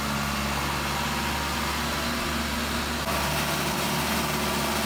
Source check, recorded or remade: recorded